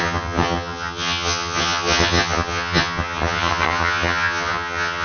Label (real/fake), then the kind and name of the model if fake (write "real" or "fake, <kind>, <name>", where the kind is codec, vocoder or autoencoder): fake, vocoder, HiFi-GAN